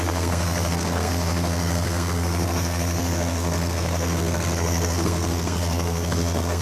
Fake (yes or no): yes